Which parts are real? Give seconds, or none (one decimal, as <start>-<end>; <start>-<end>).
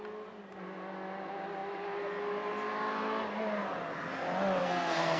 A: 0.0-4.6